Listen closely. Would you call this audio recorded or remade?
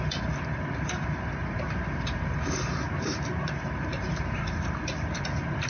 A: remade